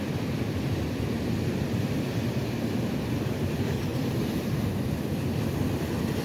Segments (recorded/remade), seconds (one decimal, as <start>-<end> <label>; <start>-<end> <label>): 0.0-6.2 recorded